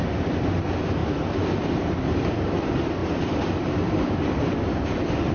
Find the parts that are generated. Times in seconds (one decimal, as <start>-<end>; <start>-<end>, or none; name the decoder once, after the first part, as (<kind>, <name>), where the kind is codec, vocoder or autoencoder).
1.0-2.4 (vocoder, BigVGAN v2); 3.0-5.3